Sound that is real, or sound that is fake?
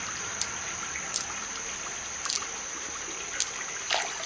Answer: real